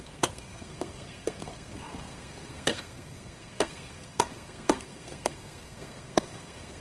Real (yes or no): no